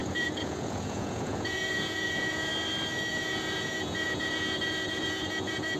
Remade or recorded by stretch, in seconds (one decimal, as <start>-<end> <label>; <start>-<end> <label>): 0.0-2.5 remade; 2.5-3.1 recorded; 3.1-5.8 remade